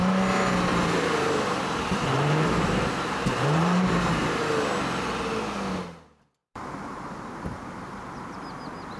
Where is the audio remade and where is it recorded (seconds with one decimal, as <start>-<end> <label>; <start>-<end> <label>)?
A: 0.0-0.7 recorded; 0.7-4.4 remade; 4.4-6.4 recorded; 6.4-7.3 remade; 7.3-9.0 recorded